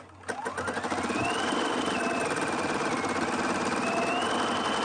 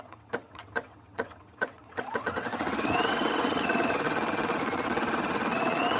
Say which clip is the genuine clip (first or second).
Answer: first